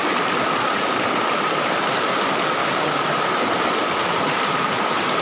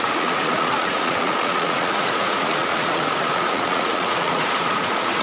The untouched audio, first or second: first